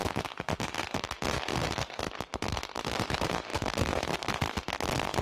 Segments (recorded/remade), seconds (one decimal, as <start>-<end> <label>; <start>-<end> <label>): 0.0-5.2 remade